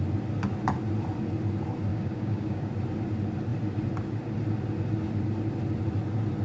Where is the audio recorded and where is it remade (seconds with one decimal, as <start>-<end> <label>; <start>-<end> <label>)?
0.0-1.9 recorded; 1.9-2.7 remade; 2.7-6.4 recorded